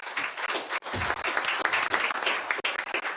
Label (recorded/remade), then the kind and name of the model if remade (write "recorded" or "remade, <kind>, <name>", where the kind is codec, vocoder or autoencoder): recorded